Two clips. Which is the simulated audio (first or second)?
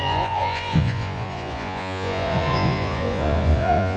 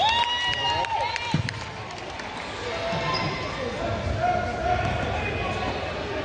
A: first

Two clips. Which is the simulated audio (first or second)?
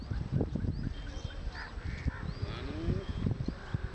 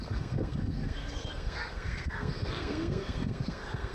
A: second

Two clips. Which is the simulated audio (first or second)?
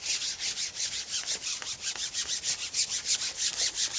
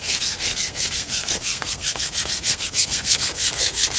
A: second